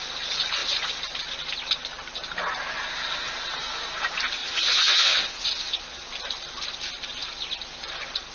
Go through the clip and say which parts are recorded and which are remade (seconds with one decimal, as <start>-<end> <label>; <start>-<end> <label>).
0.0-4.4 recorded; 4.4-6.1 remade; 6.1-8.3 recorded